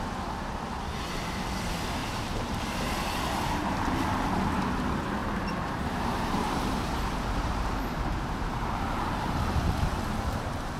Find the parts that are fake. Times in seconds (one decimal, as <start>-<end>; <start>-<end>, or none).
2.0-2.6; 5.2-9.5